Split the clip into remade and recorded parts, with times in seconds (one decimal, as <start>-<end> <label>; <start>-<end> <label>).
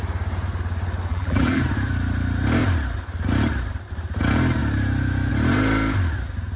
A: 0.0-1.1 recorded; 1.1-1.6 remade; 1.6-6.6 recorded